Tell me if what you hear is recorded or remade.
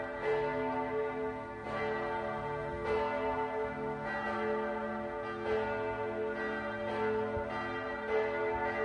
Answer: recorded